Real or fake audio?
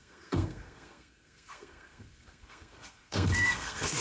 fake